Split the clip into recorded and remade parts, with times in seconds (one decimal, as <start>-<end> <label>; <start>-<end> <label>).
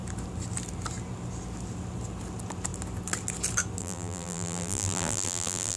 0.0-3.8 recorded; 3.8-5.8 remade